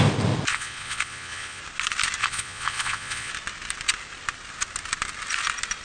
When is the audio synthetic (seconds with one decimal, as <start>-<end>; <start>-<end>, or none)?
0.5-1.6; 2.2-3.3